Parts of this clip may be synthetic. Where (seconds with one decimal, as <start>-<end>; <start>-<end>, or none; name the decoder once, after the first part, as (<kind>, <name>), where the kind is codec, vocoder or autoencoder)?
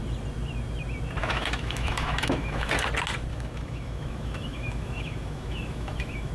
1.2-2.7 (autoencoder, DAC-VAE); 3.3-6.3